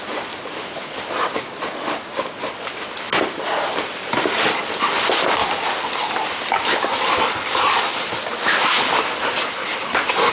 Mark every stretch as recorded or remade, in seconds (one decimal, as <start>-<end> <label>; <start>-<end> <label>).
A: 0.0-10.3 recorded